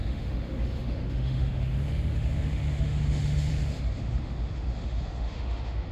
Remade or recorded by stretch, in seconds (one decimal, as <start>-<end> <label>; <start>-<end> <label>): 0.0-5.9 remade